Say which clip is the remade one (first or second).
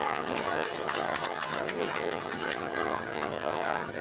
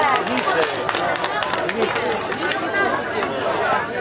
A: first